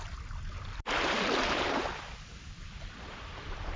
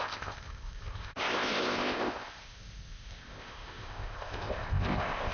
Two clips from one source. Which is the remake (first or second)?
second